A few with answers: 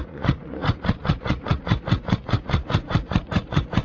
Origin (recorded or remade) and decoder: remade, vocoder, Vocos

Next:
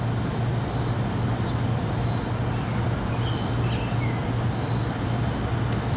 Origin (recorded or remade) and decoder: recorded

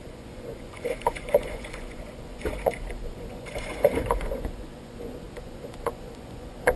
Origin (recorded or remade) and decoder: remade, vocoder, Vocos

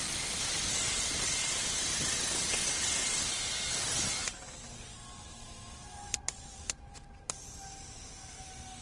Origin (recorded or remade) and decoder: recorded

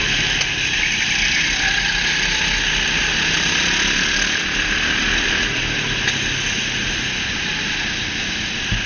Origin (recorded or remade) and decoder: recorded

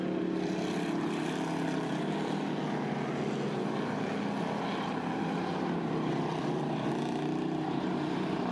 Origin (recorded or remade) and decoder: recorded